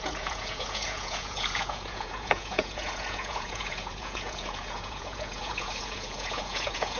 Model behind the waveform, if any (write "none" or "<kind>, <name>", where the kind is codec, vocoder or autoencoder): vocoder, Vocos